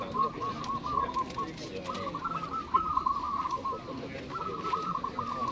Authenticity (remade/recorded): recorded